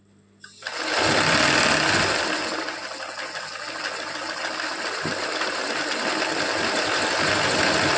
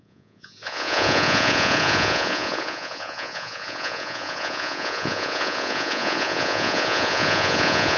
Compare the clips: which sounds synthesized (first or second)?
second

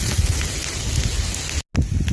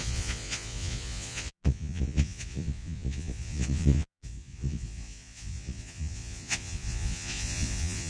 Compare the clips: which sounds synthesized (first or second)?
second